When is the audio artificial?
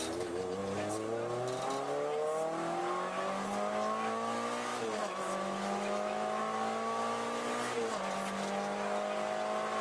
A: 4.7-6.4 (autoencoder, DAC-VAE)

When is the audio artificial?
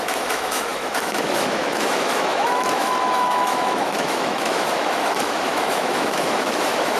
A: 0.0-7.0 (autoencoder, DAC-VAE)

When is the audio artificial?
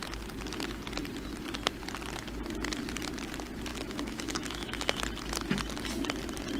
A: 3.7-5.0 (autoencoder, DAC-VAE)